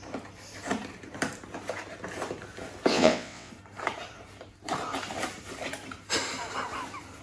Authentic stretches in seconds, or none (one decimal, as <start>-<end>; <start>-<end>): 0.0-2.9; 3.5-7.2